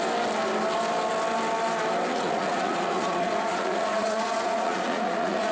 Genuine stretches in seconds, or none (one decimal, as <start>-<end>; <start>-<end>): 0.0-2.1